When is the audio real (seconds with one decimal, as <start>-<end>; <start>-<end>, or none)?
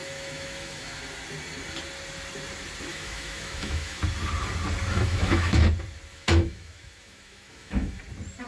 1.0-2.9; 4.0-4.9; 5.6-6.1; 8.0-8.5